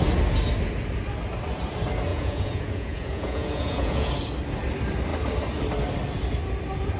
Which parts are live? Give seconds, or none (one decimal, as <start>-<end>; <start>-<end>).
0.0-2.1; 4.1-7.0